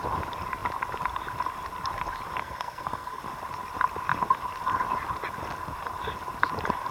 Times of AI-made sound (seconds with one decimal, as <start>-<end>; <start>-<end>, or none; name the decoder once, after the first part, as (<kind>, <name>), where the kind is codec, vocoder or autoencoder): 2.4-3.2 (codec, SNAC)